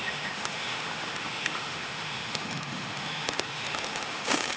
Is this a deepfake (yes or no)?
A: yes